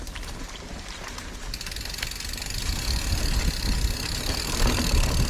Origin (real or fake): real